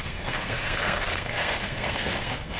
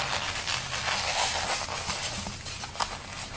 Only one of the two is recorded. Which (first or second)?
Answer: second